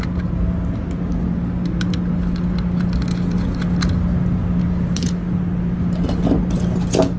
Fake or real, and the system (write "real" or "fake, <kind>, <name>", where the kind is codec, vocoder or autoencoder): real